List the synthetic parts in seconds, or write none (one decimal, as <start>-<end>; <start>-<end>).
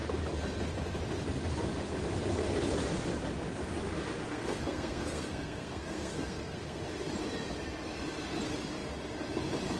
4.2-6.8